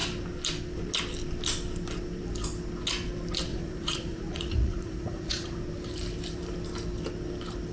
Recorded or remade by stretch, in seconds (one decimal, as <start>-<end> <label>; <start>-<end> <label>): 0.0-3.5 recorded; 3.5-5.6 remade; 5.6-7.7 recorded